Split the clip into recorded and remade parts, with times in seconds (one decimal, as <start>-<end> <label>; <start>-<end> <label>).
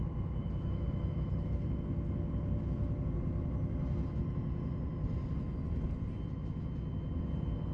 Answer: 0.0-0.4 recorded; 0.4-1.9 remade; 1.9-7.7 recorded